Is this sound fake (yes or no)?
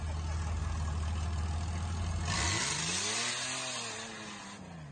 no